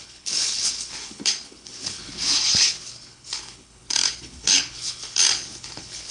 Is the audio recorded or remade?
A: remade